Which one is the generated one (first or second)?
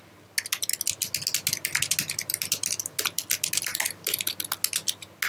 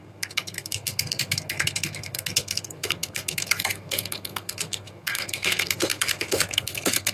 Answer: second